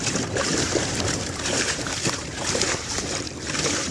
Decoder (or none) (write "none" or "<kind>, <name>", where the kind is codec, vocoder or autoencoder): vocoder, BigVGAN v2